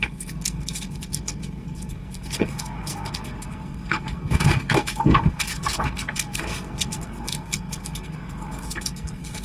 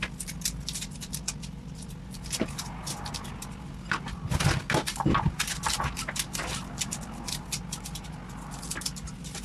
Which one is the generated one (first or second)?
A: first